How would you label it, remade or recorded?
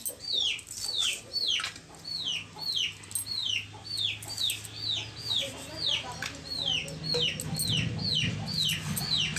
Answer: recorded